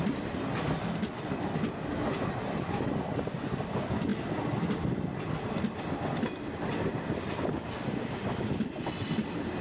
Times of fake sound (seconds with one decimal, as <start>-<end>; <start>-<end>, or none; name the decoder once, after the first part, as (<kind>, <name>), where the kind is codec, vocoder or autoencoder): none